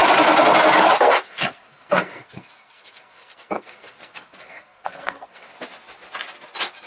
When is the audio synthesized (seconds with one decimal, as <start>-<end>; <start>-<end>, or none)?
1.0-5.5